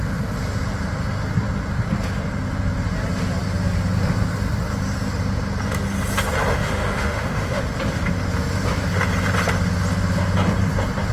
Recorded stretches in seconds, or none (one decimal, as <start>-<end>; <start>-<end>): 0.0-6.5; 7.6-11.1